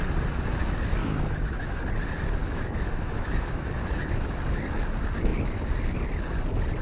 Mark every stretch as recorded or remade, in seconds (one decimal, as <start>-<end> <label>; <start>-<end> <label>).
0.0-1.0 recorded; 1.0-1.7 remade; 1.7-2.4 recorded; 2.4-4.2 remade; 4.2-6.8 recorded